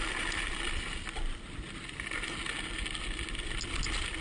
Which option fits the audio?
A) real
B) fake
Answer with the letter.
A